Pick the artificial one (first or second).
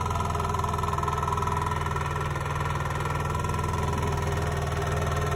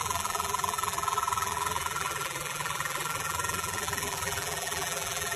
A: second